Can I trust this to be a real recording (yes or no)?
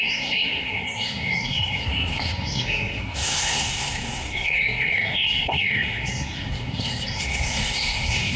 no